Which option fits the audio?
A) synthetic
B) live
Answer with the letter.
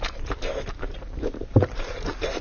A